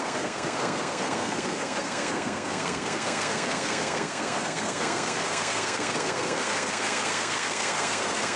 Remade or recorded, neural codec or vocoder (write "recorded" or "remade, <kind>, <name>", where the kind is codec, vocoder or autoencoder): remade, codec, SNAC